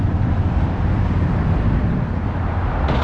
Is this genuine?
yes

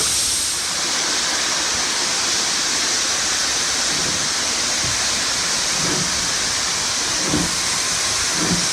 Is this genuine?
yes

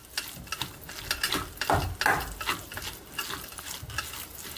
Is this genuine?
yes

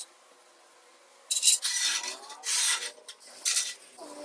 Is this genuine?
yes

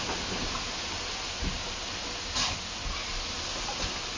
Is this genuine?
yes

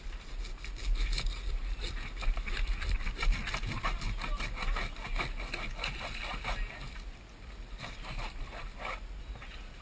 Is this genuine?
yes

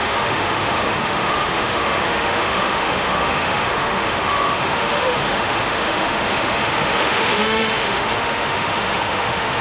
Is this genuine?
no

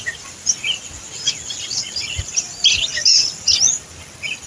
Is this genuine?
yes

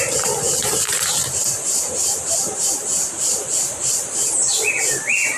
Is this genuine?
yes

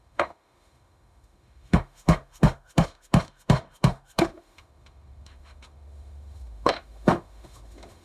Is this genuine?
no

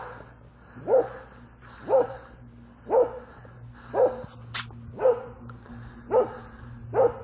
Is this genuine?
yes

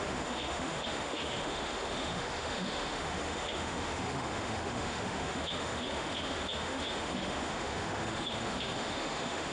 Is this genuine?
no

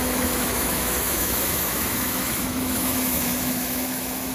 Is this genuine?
no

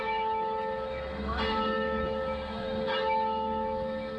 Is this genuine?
no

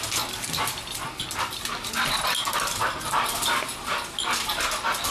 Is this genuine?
yes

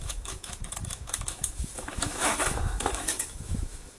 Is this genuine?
no